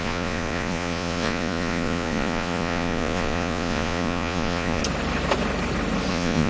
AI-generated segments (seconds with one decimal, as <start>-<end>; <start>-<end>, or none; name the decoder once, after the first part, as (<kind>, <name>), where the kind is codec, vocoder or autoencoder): 0.0-4.8 (vocoder, Vocos); 6.1-6.5